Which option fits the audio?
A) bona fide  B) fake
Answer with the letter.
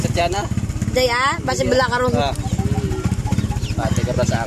A